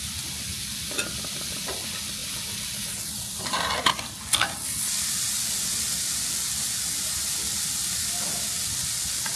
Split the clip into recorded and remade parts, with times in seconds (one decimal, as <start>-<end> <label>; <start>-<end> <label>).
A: 0.0-9.4 recorded